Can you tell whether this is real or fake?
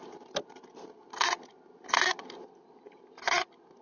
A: real